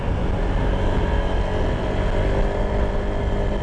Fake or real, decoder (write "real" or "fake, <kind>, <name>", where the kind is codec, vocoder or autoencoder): real